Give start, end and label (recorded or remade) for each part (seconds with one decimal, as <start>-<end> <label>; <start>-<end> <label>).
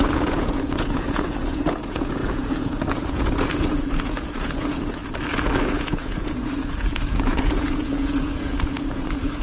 0.0-5.0 remade; 5.0-5.6 recorded; 5.6-9.4 remade